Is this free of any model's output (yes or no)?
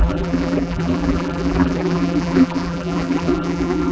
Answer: no